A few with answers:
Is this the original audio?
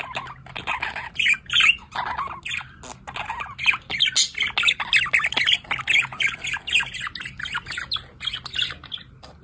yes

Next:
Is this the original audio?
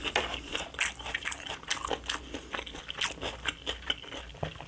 yes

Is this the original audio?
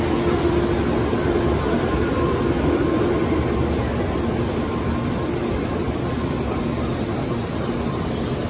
yes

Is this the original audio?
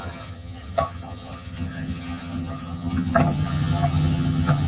no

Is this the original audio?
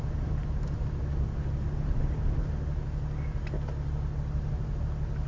yes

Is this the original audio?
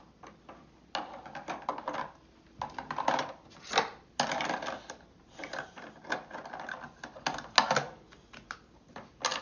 yes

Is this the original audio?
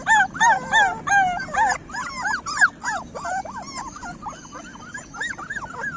yes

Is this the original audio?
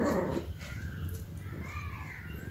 no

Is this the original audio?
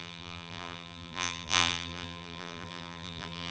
no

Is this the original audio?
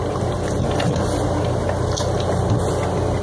yes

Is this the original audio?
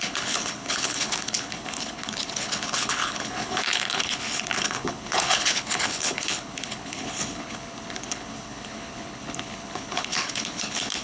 no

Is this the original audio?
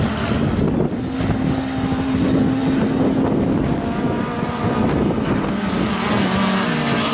yes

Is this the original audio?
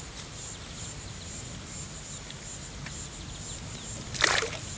yes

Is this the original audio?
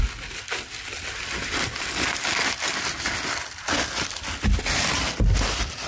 yes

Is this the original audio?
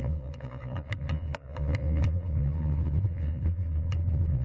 no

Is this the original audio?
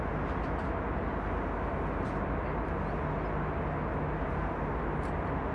yes